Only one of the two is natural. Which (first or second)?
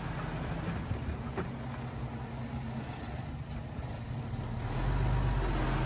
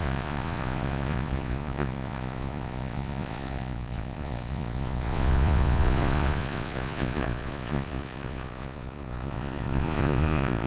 first